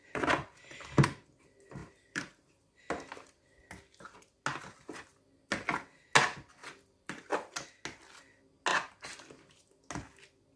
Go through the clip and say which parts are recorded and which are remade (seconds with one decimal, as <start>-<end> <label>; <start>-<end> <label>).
0.0-1.8 recorded; 1.8-2.6 remade; 2.6-6.6 recorded; 6.6-7.3 remade; 7.3-10.6 recorded